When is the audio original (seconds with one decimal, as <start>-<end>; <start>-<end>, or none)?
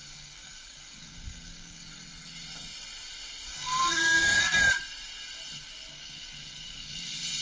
1.9-3.5; 4.4-5.9; 7.0-7.4